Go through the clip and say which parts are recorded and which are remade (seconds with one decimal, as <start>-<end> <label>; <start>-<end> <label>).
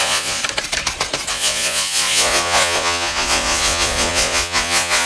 0.0-0.4 remade; 0.4-1.3 recorded; 1.3-5.1 remade